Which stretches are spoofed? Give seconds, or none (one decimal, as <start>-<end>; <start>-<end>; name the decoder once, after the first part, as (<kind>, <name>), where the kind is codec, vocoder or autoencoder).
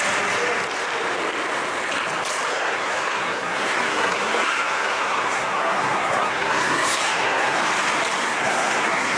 2.5-7.6 (codec, SNAC); 8.2-9.2